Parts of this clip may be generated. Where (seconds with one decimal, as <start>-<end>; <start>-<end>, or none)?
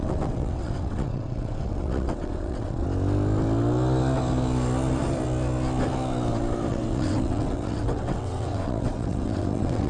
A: 0.0-2.8; 6.7-9.9